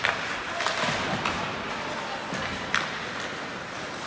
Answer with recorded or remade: recorded